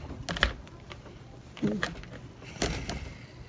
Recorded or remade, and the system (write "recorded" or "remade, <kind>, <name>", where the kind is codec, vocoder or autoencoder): recorded